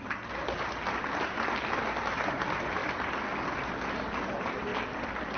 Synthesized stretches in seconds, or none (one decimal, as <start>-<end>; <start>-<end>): none